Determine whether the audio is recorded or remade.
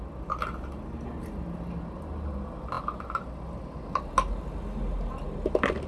recorded